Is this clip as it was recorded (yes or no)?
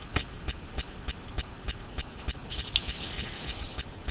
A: yes